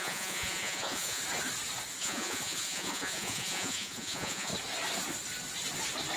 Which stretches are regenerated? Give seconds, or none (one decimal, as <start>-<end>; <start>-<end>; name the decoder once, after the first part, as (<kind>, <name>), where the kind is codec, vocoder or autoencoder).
0.0-1.2 (vocoder, Vocos); 2.0-4.5